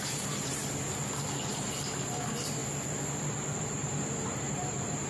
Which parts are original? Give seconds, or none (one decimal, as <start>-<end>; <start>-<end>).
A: 0.6-1.5; 2.6-3.6